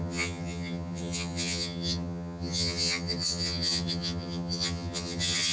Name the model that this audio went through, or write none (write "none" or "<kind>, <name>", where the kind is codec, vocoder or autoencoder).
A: vocoder, HiFi-GAN